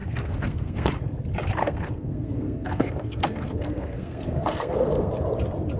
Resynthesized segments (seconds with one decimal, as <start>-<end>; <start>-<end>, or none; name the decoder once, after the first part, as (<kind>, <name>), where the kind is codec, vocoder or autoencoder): 0.0-0.9 (codec, SNAC); 1.6-5.1

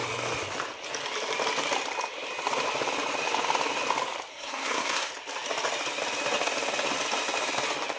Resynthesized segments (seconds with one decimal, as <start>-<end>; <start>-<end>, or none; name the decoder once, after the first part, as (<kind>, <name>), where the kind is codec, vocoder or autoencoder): 4.3-5.1 (codec, SNAC)

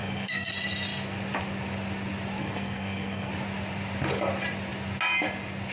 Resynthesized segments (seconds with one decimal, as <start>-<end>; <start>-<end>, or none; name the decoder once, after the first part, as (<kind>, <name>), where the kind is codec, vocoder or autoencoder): 0.0-0.5 (codec, SNAC); 2.4-3.3